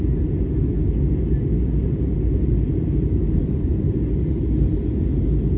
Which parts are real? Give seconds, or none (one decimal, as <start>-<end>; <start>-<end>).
0.0-1.8; 4.8-5.6